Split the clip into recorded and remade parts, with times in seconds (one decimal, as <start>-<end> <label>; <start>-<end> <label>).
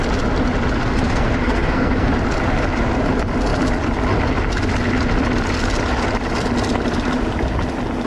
0.0-0.8 recorded; 0.8-2.1 remade; 2.1-8.1 recorded